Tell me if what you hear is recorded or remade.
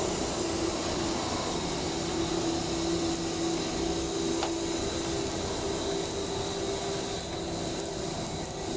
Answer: recorded